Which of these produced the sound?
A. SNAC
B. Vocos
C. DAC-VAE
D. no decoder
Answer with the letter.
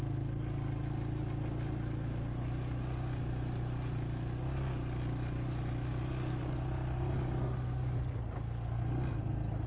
D